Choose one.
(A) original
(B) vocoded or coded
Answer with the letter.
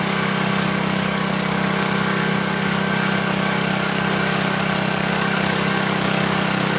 B